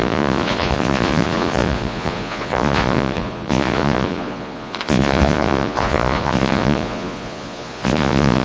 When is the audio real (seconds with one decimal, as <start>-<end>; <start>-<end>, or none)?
none

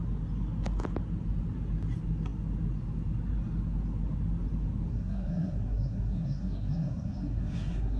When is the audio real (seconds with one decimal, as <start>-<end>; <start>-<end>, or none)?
0.0-4.9

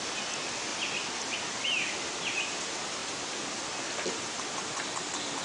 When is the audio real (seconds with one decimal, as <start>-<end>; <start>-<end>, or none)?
0.0-5.4

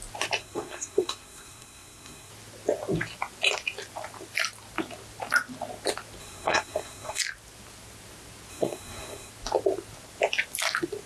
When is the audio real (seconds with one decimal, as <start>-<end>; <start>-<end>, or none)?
0.0-0.4; 2.3-6.2; 7.2-8.5; 9.3-11.1

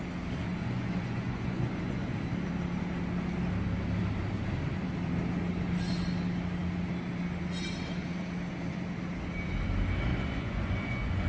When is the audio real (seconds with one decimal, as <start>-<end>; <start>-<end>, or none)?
0.0-0.6; 2.1-10.1